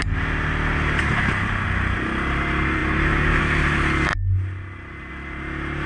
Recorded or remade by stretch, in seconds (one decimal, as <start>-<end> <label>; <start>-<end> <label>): 0.0-5.9 recorded

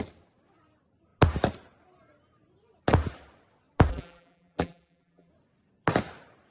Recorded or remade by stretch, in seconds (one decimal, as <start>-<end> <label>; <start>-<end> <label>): 0.0-3.9 recorded; 3.9-5.3 remade; 5.3-6.5 recorded

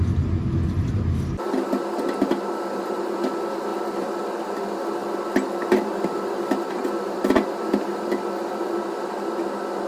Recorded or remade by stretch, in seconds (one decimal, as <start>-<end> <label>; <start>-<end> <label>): 0.0-9.9 recorded

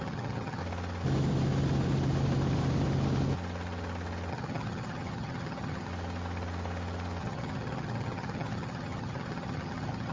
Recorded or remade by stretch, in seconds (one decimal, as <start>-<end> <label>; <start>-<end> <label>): 0.0-0.6 remade; 0.6-4.3 recorded; 4.3-5.9 remade; 5.9-7.2 recorded; 7.2-10.1 remade

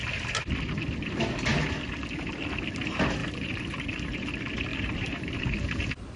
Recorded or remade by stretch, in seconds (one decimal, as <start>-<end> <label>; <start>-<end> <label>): 0.0-3.2 recorded; 3.2-4.3 remade; 4.3-4.7 recorded; 4.7-5.4 remade; 5.4-6.2 recorded